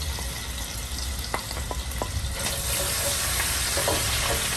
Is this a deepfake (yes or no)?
no